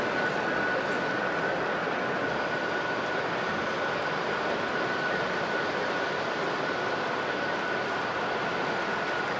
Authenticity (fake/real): real